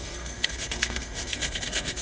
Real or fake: fake